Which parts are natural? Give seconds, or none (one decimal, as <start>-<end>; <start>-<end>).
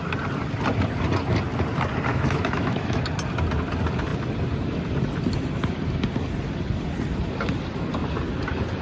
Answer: 0.0-2.1; 3.0-8.8